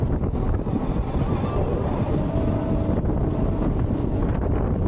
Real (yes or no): yes